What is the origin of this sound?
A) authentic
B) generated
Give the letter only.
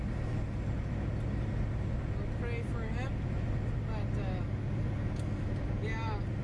A